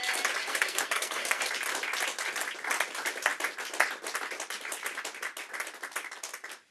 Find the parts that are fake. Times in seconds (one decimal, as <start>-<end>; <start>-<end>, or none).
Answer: 0.4-1.4